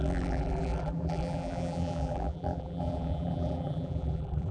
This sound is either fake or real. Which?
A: fake